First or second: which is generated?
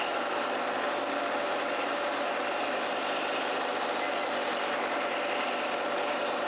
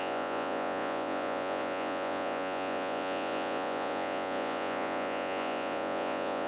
second